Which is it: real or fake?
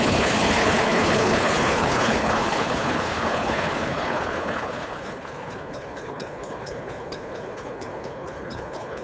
fake